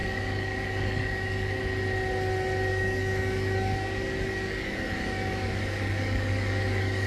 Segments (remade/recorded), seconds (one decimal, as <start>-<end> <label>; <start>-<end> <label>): 0.0-1.6 remade; 1.6-2.7 recorded; 2.7-7.1 remade